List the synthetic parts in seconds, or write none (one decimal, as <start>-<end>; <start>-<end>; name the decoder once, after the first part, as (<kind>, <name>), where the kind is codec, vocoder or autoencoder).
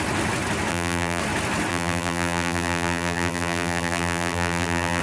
0.7-1.2 (vocoder, BigVGAN v2); 1.7-5.0